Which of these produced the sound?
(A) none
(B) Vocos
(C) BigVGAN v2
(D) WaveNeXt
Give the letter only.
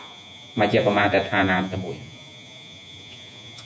B